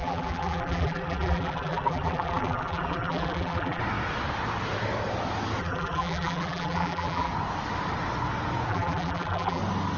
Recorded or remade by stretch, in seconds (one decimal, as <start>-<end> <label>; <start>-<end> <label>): 0.0-3.8 remade; 3.8-5.6 recorded; 5.6-7.3 remade; 7.3-8.7 recorded; 8.7-9.6 remade; 9.6-10.0 recorded